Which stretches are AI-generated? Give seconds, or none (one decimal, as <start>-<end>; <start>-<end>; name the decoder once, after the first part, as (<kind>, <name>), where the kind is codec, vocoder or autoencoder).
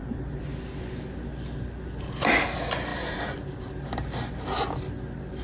none